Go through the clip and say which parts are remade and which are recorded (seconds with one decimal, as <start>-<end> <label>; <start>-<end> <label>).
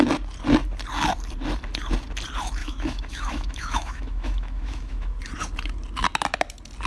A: 0.0-2.6 recorded; 2.6-5.2 remade; 5.2-6.9 recorded